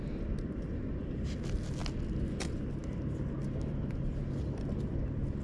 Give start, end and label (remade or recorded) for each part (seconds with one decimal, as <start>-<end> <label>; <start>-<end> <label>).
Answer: 0.0-5.4 recorded

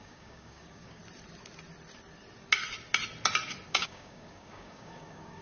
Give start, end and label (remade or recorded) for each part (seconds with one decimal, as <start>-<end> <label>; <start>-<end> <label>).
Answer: 0.0-1.0 remade; 1.0-3.7 recorded; 3.7-5.4 remade

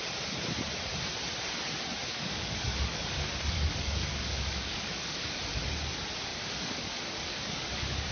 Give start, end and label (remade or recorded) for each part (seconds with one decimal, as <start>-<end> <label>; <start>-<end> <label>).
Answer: 0.0-1.9 recorded; 1.9-5.4 remade; 5.4-6.3 recorded; 6.3-8.1 remade

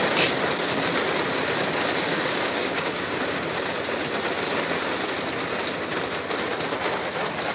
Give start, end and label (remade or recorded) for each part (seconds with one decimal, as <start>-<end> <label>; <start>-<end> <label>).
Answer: 0.0-2.1 recorded; 2.1-3.2 remade; 3.2-7.5 recorded

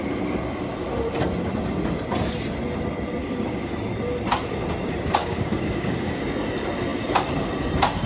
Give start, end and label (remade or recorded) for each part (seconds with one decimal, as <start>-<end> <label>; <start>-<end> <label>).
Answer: 0.0-3.2 recorded; 3.2-3.9 remade; 3.9-5.2 recorded; 5.2-6.2 remade; 6.2-8.1 recorded

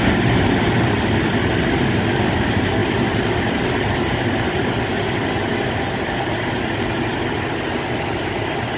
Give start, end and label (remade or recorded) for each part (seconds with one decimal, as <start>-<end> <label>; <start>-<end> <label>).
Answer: 0.0-8.8 recorded

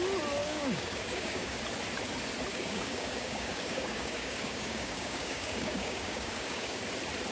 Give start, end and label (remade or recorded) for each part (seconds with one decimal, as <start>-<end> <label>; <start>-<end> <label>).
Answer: 0.0-0.4 recorded; 0.4-1.6 remade; 1.6-2.5 recorded; 2.5-6.8 remade; 6.8-7.3 recorded